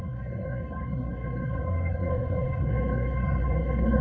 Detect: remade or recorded remade